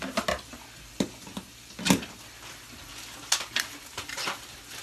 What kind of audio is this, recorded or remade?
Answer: recorded